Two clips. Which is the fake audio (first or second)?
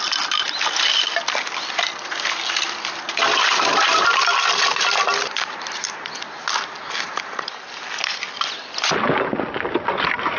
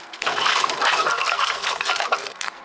second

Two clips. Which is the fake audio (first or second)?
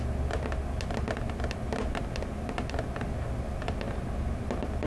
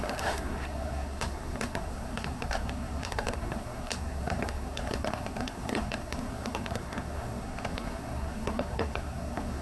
second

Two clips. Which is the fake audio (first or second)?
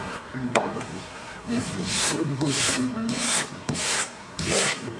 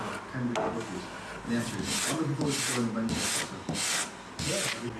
first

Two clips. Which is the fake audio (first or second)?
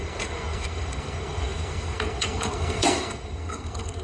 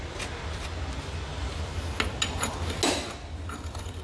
first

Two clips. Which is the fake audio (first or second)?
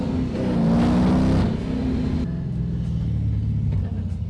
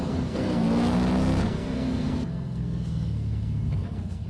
second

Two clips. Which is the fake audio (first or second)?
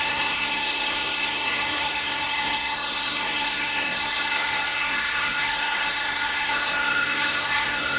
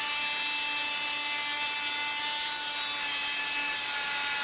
first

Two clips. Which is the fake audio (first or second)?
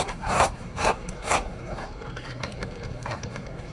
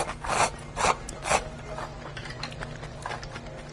first